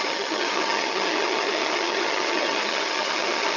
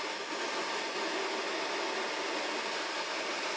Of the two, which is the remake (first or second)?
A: first